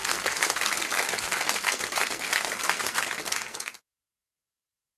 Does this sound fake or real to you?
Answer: fake